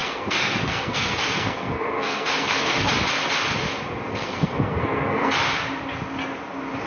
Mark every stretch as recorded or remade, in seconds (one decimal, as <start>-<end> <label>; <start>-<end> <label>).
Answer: 0.0-2.9 remade; 2.9-4.1 recorded; 4.1-5.3 remade; 5.3-6.9 recorded